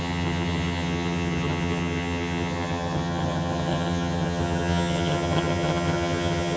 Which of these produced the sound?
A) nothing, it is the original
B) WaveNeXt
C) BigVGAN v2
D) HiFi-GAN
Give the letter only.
D